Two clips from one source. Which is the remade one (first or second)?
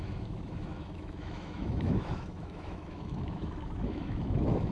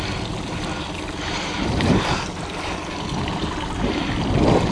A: first